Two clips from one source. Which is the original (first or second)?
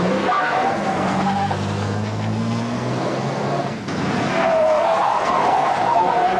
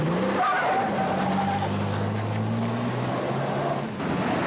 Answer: second